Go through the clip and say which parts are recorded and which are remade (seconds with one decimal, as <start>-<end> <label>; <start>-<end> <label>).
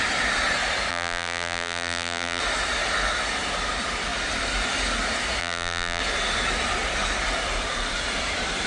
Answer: 0.0-0.9 recorded; 0.9-2.4 remade; 2.4-5.4 recorded; 5.4-6.0 remade; 6.0-8.7 recorded